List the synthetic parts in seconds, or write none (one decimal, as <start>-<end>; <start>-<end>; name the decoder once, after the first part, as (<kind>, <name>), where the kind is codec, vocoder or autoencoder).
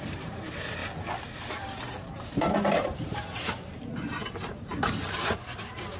0.0-0.8 (vocoder, BigVGAN v2); 1.9-6.0